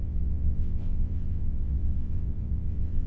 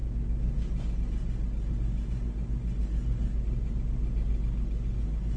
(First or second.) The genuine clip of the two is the second